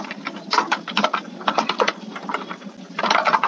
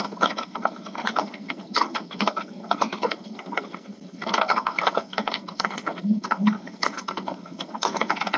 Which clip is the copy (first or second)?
second